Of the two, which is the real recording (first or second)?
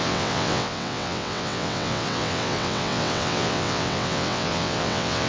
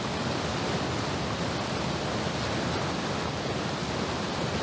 second